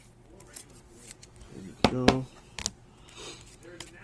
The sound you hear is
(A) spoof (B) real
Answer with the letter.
B